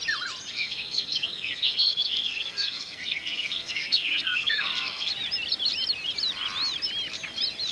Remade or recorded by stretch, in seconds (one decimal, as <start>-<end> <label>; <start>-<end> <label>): 0.0-0.5 recorded; 0.5-5.1 remade; 5.1-7.7 recorded

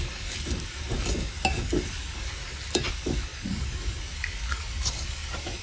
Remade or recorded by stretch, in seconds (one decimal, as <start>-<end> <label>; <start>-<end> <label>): 0.0-2.4 remade; 2.4-2.9 recorded; 2.9-5.6 remade

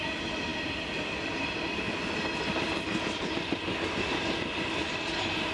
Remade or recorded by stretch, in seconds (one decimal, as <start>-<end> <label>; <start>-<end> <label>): 0.0-5.5 recorded

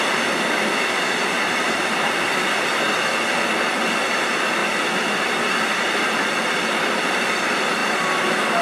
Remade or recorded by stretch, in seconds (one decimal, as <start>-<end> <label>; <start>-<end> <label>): 0.0-1.2 recorded; 1.2-2.3 remade; 2.3-8.6 recorded

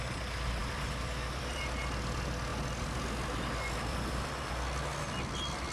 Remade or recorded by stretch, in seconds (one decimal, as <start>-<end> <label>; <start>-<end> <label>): 0.0-0.6 recorded; 0.6-1.6 remade; 1.6-3.9 recorded; 3.9-4.5 remade; 4.5-5.7 recorded

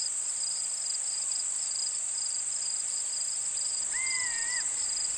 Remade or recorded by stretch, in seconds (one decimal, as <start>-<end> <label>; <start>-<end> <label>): 0.0-5.2 remade